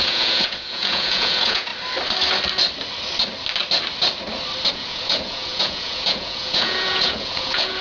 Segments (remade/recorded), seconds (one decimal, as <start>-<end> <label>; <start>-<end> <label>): 0.0-1.7 remade; 1.7-4.7 recorded; 4.7-7.8 remade